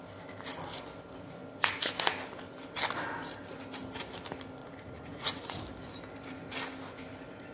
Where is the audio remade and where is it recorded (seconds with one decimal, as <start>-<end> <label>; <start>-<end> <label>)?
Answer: 0.0-4.6 recorded; 4.6-5.6 remade; 5.6-7.5 recorded